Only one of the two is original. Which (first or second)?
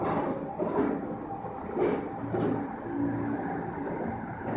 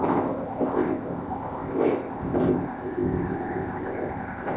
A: first